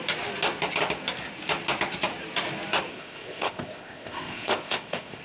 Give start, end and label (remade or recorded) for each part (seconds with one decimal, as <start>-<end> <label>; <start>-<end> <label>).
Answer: 0.0-2.9 recorded; 2.9-5.2 remade

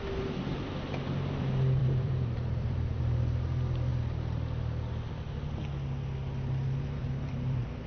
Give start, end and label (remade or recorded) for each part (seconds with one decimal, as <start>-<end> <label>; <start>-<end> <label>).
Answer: 0.0-1.8 recorded; 1.8-3.0 remade; 3.0-7.0 recorded; 7.0-7.9 remade

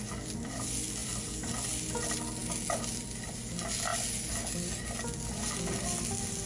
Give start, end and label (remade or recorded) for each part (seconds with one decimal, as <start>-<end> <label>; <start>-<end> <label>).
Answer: 0.0-6.5 recorded